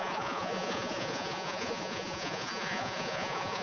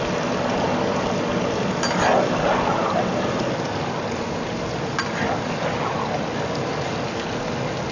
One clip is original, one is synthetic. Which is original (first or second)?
second